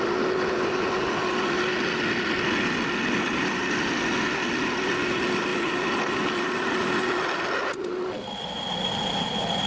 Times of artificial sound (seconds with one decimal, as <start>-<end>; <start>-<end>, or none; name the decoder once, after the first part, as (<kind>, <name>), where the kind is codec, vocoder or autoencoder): none